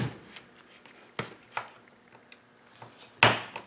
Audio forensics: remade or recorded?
recorded